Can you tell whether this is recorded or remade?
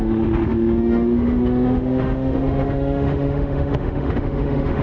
remade